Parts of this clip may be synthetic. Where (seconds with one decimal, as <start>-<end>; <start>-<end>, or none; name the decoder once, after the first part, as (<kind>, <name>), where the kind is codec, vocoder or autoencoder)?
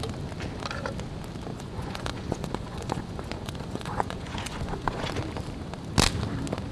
1.5-5.1 (vocoder, Vocos)